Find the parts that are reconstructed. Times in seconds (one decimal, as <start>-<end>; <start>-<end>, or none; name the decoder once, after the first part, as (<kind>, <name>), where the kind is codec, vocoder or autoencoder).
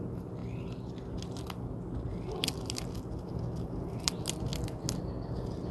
none